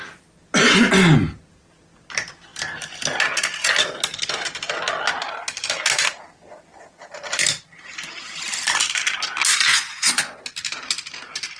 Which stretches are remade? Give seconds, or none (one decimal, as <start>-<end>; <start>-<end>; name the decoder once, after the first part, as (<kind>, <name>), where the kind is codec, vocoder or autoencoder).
9.7-10.4 (vocoder, Vocos)